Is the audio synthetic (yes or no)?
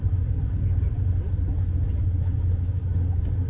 no